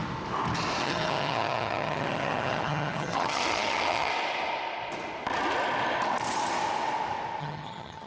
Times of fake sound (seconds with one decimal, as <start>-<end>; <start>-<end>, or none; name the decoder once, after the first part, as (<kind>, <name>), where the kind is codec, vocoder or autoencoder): 0.8-4.1 (vocoder, HiFi-GAN); 7.4-8.1